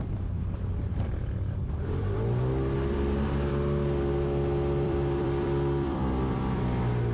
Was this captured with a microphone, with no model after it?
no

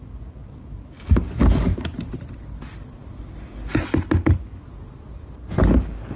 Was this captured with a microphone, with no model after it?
yes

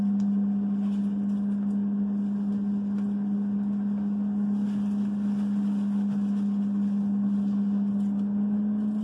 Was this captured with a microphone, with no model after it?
yes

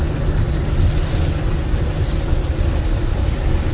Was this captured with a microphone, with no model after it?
yes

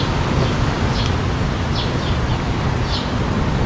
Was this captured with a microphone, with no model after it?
yes